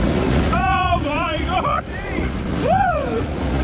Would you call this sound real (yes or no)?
no